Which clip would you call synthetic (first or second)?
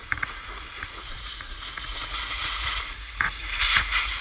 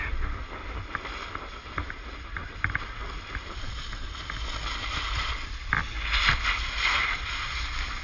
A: first